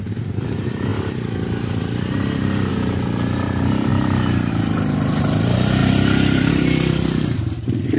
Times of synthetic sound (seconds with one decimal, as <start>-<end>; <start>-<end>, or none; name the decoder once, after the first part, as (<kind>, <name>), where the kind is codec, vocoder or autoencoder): 0.0-0.9 (vocoder, BigVGAN v2); 2.7-3.9; 4.5-8.0